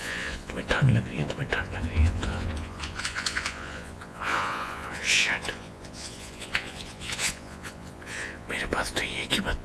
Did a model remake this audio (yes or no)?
yes